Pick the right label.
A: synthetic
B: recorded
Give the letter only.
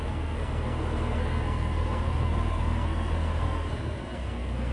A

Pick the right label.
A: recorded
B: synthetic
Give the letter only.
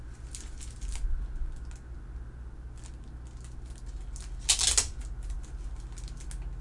A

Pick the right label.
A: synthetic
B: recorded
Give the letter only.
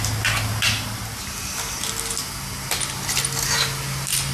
B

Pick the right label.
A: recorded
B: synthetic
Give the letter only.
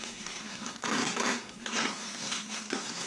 B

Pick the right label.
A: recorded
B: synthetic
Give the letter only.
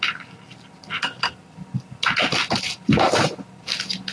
A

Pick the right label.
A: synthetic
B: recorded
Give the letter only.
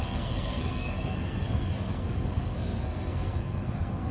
A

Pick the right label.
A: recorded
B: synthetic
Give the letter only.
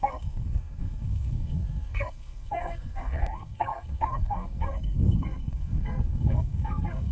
B